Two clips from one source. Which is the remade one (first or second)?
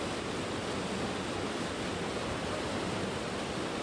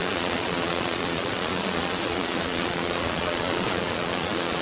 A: second